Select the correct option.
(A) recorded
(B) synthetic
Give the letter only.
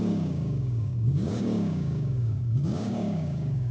B